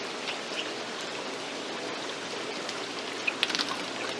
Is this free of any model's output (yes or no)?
yes